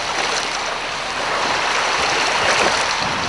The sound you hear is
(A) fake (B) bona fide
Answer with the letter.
B